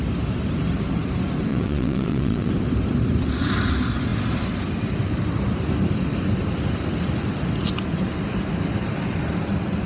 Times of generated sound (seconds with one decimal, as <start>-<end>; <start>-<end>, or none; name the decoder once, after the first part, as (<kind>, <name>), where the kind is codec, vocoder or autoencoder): 1.5-2.5 (vocoder, WaveNeXt)

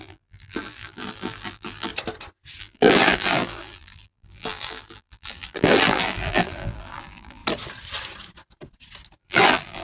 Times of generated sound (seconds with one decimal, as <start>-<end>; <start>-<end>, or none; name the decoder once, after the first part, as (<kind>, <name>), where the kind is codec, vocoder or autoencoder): 0.0-1.9 (vocoder, BigVGAN v2); 2.6-7.4; 9.2-9.8

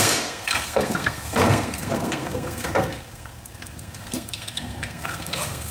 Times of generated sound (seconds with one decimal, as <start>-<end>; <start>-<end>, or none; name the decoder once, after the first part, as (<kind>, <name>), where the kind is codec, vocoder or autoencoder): 0.0-5.7 (codec, SNAC)

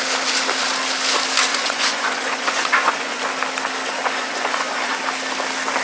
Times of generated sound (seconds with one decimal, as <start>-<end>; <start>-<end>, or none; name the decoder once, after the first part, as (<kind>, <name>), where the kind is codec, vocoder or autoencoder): 1.5-3.2 (vocoder, Vocos); 4.0-4.9